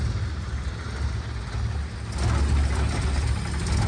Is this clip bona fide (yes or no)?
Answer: yes